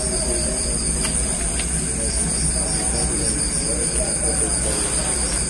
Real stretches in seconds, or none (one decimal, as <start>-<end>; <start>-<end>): 0.0-5.5